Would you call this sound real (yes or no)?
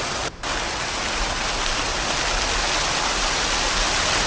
yes